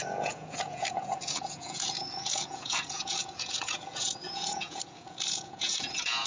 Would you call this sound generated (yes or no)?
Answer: yes